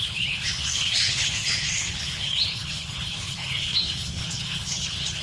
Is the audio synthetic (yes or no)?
yes